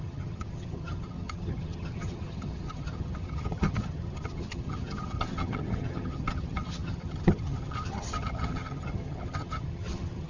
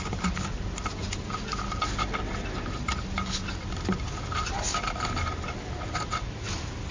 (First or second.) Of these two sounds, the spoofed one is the first